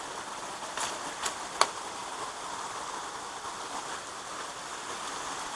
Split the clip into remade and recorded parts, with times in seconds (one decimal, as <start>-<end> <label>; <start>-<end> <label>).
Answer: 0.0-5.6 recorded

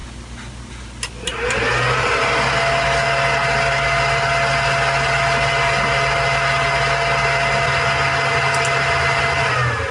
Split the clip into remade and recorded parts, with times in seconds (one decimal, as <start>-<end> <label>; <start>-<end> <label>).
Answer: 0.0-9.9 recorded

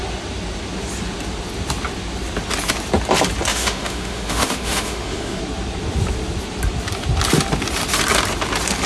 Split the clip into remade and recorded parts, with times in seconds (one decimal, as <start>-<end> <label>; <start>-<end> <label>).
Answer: 0.0-3.5 recorded; 3.5-5.4 remade; 5.4-8.9 recorded

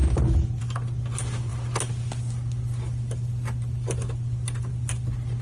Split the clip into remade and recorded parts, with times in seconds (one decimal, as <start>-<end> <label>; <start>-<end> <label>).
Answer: 0.0-5.4 recorded

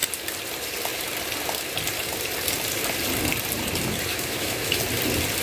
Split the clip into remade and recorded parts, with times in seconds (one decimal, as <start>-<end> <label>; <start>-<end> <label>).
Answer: 0.0-4.1 recorded; 4.1-4.8 remade; 4.8-5.4 recorded